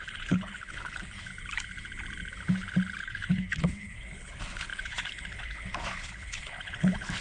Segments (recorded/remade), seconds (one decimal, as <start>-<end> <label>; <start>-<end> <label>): 0.0-1.3 remade; 1.3-3.0 recorded; 3.0-7.2 remade